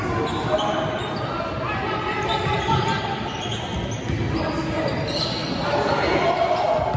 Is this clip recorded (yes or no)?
yes